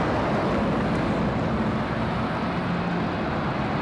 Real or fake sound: real